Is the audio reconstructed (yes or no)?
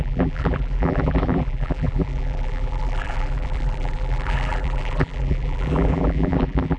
yes